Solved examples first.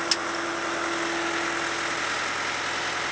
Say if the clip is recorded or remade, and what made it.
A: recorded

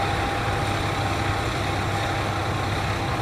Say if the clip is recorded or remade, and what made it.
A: recorded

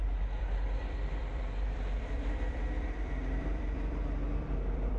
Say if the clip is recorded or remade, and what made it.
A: remade, vocoder, BigVGAN v2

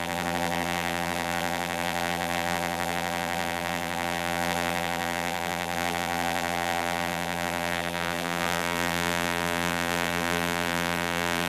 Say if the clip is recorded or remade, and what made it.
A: remade, vocoder, BigVGAN v2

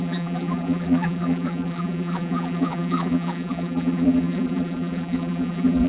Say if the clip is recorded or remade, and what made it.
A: remade, vocoder, BigVGAN v2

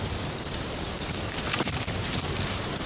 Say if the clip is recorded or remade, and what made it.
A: remade, vocoder, BigVGAN v2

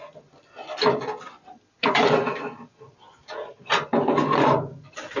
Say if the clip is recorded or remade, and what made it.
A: recorded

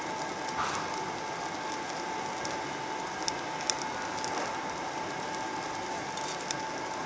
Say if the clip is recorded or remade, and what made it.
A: recorded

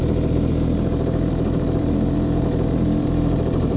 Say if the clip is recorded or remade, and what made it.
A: remade, vocoder, BigVGAN v2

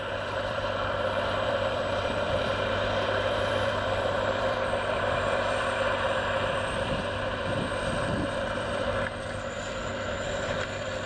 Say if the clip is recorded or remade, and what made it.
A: remade, vocoder, BigVGAN v2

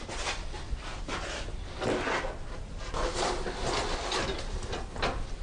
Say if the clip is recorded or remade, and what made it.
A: recorded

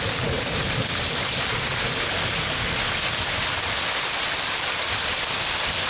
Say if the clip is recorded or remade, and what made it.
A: recorded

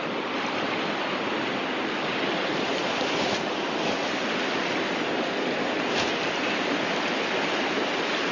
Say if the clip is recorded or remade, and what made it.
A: recorded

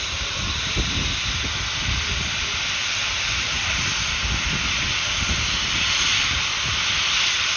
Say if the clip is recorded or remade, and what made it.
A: remade, vocoder, BigVGAN v2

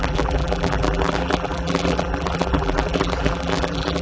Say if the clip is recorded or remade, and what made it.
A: remade, vocoder, BigVGAN v2